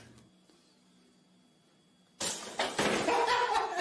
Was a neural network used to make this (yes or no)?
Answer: no